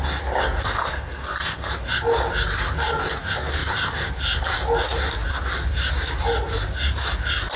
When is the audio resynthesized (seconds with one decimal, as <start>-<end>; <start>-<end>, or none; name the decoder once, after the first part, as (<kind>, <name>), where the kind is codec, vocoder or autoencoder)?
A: 0.8-1.7 (codec, SNAC)